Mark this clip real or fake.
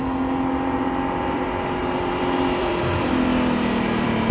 fake